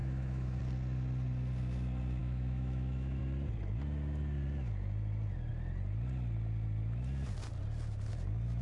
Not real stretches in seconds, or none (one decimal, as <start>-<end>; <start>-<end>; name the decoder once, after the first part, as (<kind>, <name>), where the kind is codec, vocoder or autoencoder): 0.0-0.6 (autoencoder, DAC-VAE); 2.2-3.2